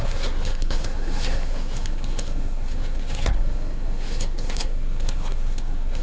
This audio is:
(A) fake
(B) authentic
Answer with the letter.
A